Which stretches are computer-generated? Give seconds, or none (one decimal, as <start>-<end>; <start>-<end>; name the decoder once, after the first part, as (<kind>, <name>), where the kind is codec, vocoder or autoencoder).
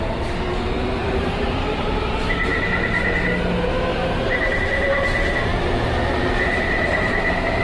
1.0-2.0 (vocoder, BigVGAN v2); 3.9-4.6